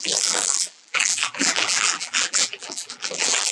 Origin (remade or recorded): remade